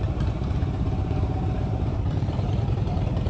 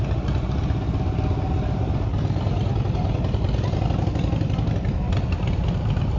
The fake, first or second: first